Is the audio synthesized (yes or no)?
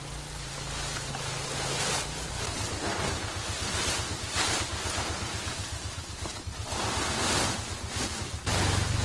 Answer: no